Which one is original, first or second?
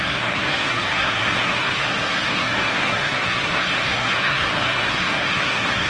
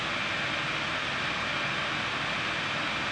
second